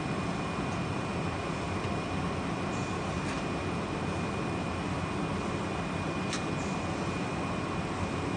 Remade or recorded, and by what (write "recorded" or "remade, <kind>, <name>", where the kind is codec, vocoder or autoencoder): recorded